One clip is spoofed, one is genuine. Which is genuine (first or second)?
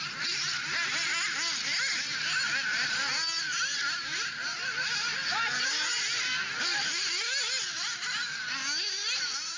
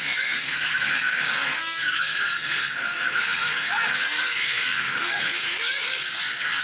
first